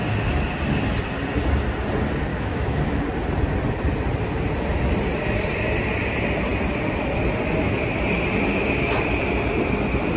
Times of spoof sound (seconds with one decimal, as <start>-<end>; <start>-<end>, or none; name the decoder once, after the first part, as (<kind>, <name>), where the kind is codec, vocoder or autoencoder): 2.3-3.0 (autoencoder, DAC-VAE)